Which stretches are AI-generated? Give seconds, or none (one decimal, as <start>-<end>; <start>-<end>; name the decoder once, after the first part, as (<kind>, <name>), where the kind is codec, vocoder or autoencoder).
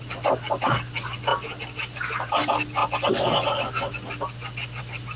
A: none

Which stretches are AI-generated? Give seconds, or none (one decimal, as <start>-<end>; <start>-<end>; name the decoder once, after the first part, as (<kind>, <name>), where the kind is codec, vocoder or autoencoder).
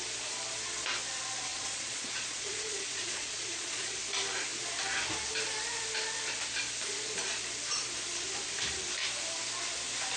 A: 1.5-4.0 (vocoder, Vocos)